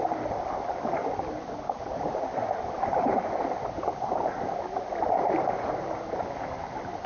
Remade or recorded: recorded